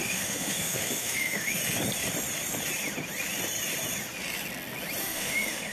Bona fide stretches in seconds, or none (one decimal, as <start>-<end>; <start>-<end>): 1.6-5.0